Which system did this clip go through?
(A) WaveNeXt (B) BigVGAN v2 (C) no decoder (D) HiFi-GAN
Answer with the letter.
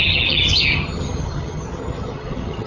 D